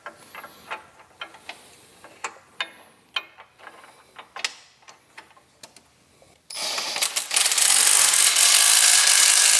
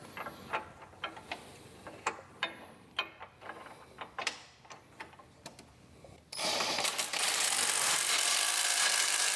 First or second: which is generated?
second